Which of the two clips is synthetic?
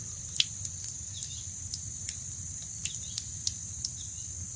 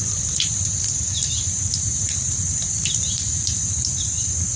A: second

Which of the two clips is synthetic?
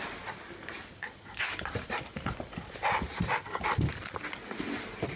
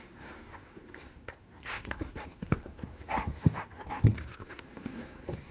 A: second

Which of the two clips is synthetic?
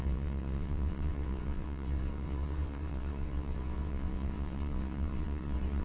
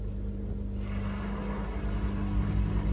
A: first